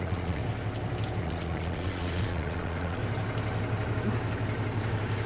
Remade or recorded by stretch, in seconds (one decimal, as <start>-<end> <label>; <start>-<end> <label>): 0.0-0.4 remade; 0.4-1.2 recorded; 1.2-3.0 remade; 3.0-5.3 recorded